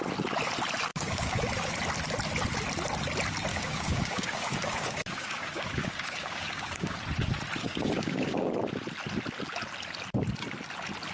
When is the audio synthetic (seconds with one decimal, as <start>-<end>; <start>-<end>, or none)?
0.9-1.4; 3.5-7.0; 7.6-8.5